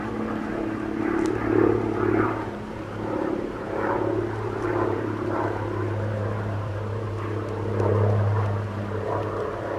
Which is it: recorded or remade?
remade